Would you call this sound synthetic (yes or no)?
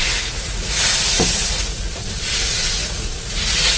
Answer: yes